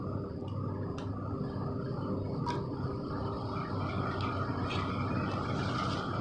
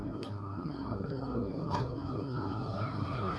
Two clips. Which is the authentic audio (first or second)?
first